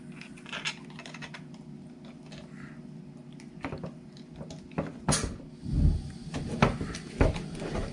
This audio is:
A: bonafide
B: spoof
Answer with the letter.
A